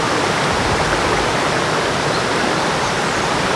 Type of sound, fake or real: real